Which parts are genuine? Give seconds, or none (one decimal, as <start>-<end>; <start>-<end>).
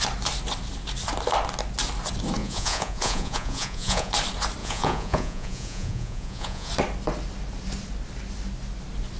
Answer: 0.0-2.4; 4.1-4.6; 6.7-9.2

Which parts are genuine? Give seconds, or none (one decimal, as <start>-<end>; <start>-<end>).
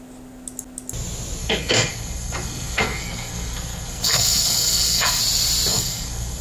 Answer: 0.0-1.4; 5.2-5.7